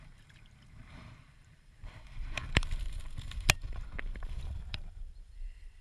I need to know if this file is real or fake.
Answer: fake